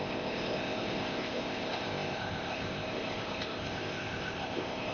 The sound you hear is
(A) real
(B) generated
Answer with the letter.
B